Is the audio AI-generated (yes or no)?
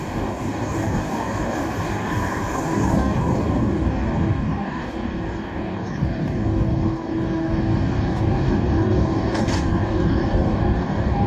yes